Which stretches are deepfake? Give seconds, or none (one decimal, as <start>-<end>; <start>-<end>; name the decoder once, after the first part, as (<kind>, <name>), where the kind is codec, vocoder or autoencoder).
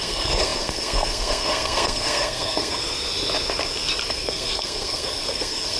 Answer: 0.0-2.8 (codec, SNAC); 4.1-5.8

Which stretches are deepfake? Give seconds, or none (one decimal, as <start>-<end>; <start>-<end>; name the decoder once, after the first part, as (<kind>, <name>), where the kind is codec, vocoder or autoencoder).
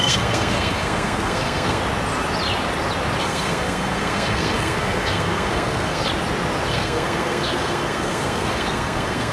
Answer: 0.0-1.8 (codec, SNAC); 3.2-6.1; 6.7-9.3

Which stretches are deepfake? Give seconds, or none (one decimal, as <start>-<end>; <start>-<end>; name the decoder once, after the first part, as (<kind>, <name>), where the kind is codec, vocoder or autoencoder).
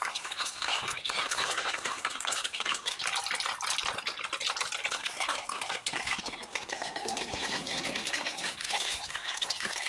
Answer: 0.0-3.0 (codec, SNAC); 4.9-9.9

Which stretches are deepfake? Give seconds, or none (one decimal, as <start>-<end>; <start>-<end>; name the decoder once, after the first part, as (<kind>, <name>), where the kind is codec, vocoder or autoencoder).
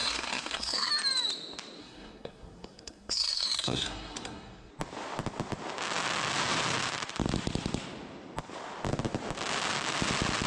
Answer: 0.0-0.9 (codec, SNAC); 1.8-4.7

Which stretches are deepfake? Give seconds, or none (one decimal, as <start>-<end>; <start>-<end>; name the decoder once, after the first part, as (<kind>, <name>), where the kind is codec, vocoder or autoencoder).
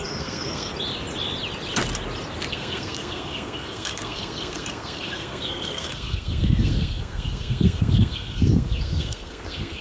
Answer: 0.0-0.7 (codec, SNAC); 2.5-9.8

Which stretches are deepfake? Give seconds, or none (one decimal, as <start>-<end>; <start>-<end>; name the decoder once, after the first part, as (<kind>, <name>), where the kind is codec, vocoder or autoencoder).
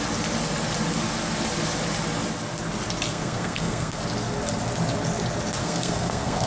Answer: 3.1-4.0 (codec, SNAC); 5.6-6.5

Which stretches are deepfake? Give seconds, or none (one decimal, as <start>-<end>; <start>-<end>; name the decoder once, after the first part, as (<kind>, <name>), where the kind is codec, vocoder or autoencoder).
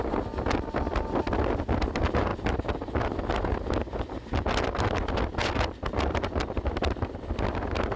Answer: none